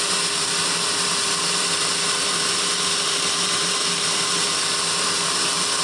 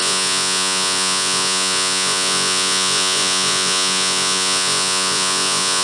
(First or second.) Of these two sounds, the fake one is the second